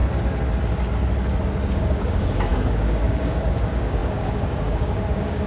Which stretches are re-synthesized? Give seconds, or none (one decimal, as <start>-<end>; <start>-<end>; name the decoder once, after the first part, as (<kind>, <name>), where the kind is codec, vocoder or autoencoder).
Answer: 1.7-5.5 (codec, DAC)